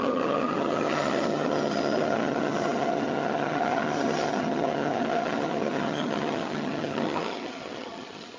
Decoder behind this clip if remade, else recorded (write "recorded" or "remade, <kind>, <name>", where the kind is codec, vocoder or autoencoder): remade, vocoder, HiFi-GAN